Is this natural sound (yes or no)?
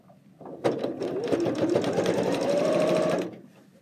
yes